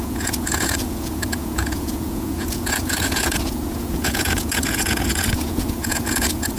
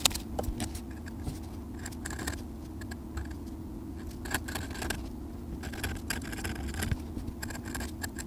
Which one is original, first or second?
second